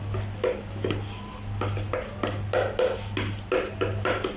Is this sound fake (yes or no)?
no